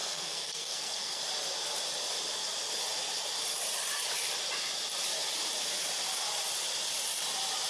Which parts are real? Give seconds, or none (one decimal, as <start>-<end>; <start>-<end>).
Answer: 1.2-7.7